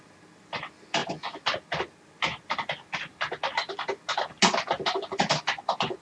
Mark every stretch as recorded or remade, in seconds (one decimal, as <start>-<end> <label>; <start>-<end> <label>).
0.0-6.0 recorded

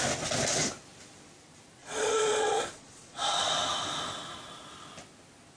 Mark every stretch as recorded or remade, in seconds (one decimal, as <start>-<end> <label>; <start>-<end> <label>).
0.0-1.8 recorded; 1.8-3.5 remade; 3.5-5.6 recorded

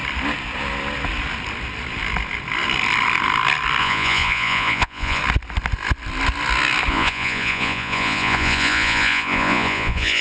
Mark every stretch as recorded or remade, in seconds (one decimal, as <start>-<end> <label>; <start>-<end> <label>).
0.0-3.8 recorded; 3.8-5.2 remade; 5.2-6.9 recorded; 6.9-10.2 remade

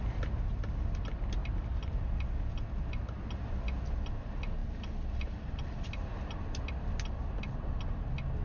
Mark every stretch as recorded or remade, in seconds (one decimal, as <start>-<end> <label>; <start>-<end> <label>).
0.0-8.4 recorded

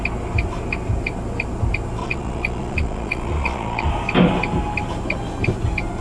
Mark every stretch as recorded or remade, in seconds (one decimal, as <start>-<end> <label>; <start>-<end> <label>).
0.0-2.0 recorded; 2.0-3.9 remade; 3.9-6.0 recorded

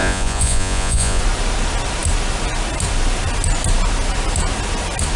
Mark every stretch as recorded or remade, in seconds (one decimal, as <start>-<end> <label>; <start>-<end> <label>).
0.0-1.2 remade; 1.2-5.2 recorded